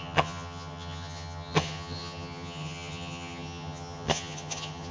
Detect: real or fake fake